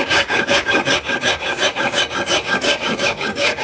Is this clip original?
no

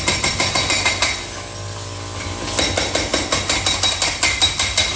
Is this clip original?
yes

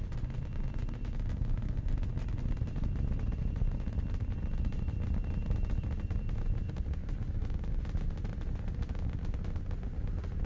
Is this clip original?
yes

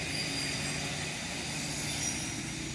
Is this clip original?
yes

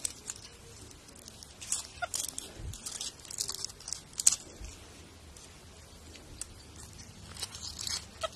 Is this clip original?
yes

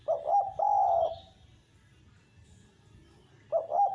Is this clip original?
yes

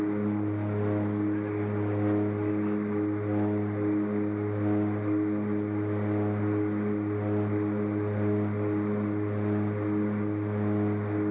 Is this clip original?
yes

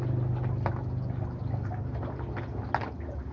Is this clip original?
yes